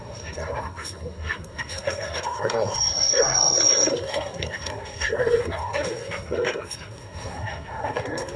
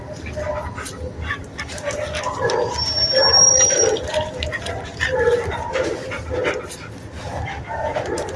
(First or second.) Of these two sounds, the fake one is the first